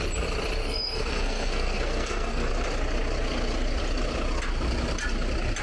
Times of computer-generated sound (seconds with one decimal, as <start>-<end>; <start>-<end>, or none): 0.6-2.5